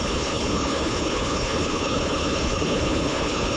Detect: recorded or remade remade